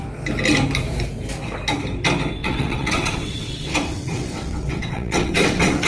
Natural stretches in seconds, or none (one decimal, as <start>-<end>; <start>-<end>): 0.0-2.4